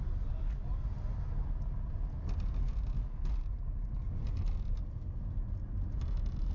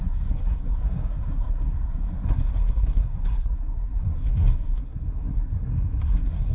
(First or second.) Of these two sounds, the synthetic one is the second